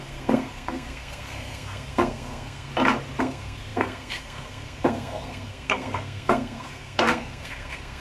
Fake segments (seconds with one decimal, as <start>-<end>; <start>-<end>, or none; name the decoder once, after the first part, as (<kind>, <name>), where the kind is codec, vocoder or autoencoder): 0.0-2.7 (codec, SNAC); 3.2-8.0